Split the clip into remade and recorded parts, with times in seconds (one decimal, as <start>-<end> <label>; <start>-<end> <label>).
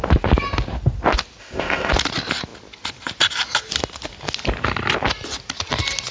0.0-1.4 recorded; 1.4-1.9 remade; 1.9-6.1 recorded